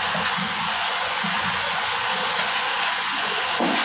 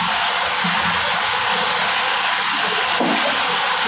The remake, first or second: first